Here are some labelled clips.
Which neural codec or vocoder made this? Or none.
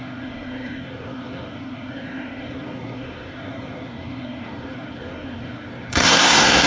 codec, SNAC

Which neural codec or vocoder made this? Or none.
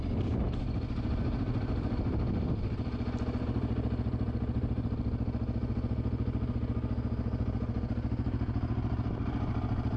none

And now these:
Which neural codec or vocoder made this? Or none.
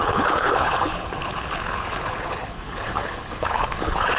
codec, HILCodec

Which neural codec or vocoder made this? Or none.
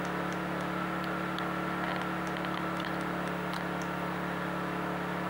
none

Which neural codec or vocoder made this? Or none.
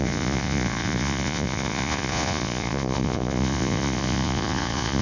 vocoder, Vocos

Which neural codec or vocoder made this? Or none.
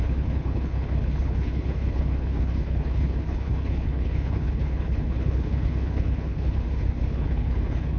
codec, HILCodec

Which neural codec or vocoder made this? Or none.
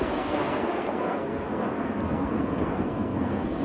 codec, SNAC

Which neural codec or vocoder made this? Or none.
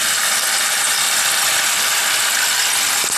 vocoder, BigVGAN v2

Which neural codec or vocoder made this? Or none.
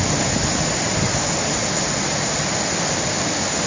none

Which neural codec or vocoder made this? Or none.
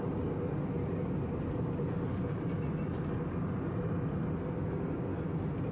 none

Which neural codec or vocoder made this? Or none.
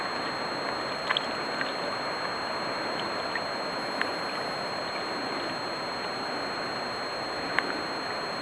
none